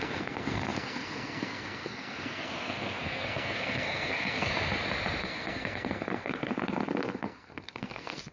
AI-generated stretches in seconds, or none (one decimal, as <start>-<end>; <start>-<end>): 0.0-4.5; 5.2-8.3